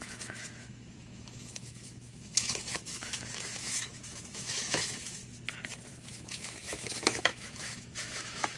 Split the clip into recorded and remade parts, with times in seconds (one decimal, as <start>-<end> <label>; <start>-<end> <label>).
0.0-5.2 remade; 5.2-5.9 recorded; 5.9-8.6 remade